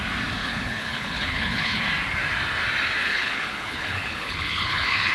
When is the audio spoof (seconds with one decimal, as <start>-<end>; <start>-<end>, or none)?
0.4-1.8; 3.0-5.1